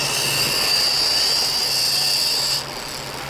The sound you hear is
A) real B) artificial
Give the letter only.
A